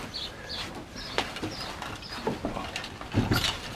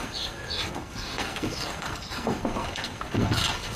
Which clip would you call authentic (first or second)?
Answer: first